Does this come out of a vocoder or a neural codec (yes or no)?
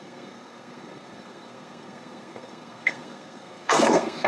yes